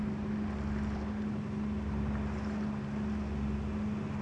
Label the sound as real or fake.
real